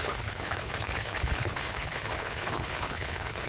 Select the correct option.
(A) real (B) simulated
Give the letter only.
B